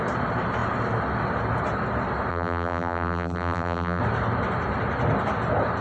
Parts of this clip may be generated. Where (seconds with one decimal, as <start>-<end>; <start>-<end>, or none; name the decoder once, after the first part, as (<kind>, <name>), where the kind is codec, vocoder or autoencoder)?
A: 2.3-4.0 (vocoder, BigVGAN v2)